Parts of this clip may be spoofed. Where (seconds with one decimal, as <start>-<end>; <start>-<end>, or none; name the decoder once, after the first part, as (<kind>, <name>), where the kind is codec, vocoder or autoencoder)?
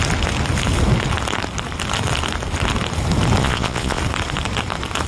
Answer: 3.4-4.0 (vocoder, Vocos)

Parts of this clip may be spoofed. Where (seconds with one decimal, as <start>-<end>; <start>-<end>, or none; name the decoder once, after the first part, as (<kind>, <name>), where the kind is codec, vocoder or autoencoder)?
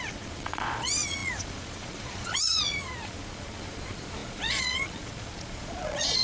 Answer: 0.0-6.2 (vocoder, Vocos)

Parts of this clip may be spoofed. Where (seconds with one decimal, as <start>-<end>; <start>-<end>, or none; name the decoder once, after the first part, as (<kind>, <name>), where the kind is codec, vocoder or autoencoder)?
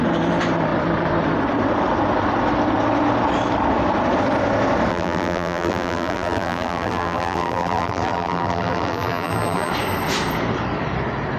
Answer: 4.9-9.7 (vocoder, BigVGAN v2)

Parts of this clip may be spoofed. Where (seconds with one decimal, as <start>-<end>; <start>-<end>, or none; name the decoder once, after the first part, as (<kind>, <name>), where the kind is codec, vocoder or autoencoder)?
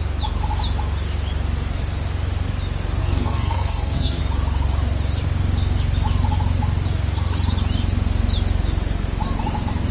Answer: 3.0-4.2 (codec, SNAC)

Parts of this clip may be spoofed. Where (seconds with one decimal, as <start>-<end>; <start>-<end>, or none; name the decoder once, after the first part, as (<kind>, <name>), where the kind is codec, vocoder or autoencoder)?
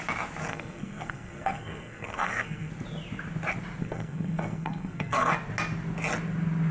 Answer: 0.5-2.7 (codec, SNAC); 3.8-5.3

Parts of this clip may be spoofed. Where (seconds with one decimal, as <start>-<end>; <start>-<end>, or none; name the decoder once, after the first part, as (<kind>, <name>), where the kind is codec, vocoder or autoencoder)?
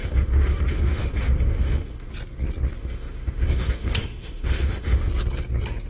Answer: 0.0-2.1 (autoencoder, DAC-VAE); 2.8-5.1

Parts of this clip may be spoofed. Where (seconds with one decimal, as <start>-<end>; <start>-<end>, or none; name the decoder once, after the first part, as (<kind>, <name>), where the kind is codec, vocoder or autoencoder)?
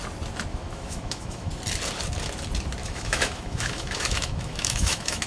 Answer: 0.5-1.5 (autoencoder, DAC-VAE); 2.8-5.3